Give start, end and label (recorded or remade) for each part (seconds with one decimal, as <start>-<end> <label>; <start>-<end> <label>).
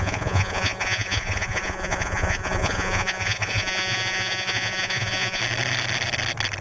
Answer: 0.0-5.4 remade; 5.4-6.6 recorded